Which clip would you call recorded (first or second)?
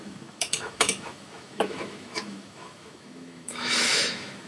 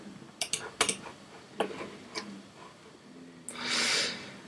second